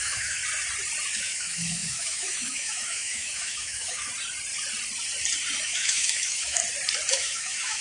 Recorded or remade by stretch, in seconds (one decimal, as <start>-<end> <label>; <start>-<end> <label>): 0.0-0.4 remade; 0.4-1.2 recorded; 1.2-4.1 remade; 4.1-5.6 recorded; 5.6-6.6 remade; 6.6-7.1 recorded; 7.1-7.8 remade

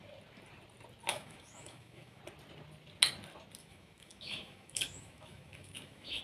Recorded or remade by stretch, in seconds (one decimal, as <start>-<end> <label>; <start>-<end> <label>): 0.0-1.1 recorded; 1.1-2.2 remade; 2.2-3.6 recorded; 3.6-6.2 remade

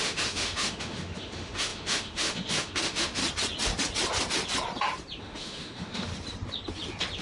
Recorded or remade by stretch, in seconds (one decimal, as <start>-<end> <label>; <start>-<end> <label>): 0.0-3.2 remade; 3.2-5.2 recorded; 5.2-6.1 remade; 6.1-7.2 recorded

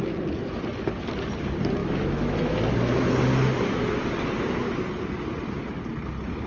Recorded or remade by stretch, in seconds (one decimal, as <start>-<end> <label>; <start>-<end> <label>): 0.0-1.8 recorded; 1.8-2.7 remade; 2.7-6.5 recorded

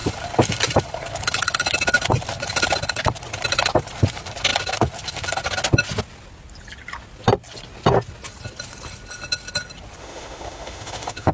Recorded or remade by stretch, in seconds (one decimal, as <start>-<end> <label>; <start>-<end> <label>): 0.0-10.0 recorded; 10.0-11.3 remade

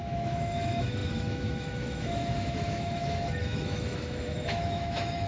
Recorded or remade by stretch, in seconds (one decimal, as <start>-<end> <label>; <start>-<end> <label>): 0.0-5.3 remade

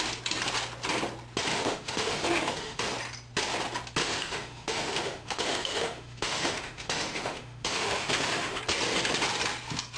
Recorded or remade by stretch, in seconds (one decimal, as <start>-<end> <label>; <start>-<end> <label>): 0.0-1.5 recorded; 1.5-2.8 remade; 2.8-4.0 recorded; 4.0-8.6 remade; 8.6-10.0 recorded